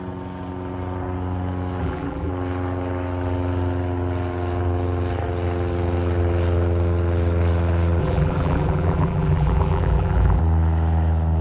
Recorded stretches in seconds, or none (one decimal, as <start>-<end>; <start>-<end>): 0.0-1.8; 2.3-8.0; 10.4-11.4